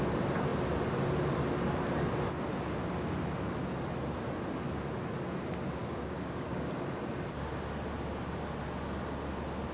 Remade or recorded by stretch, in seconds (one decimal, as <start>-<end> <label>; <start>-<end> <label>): 0.0-5.8 recorded; 5.8-6.7 remade; 6.7-9.7 recorded